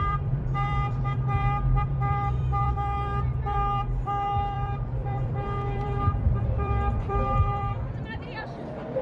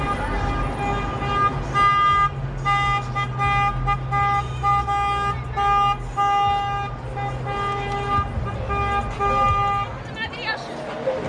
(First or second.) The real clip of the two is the second